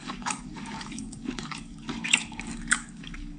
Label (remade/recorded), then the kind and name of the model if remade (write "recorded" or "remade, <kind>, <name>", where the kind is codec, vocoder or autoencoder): remade, codec, DAC